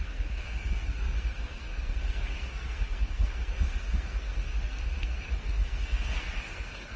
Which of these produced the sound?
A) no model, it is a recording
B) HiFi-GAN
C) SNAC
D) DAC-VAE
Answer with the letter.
C